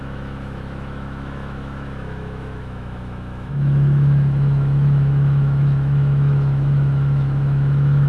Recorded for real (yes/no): no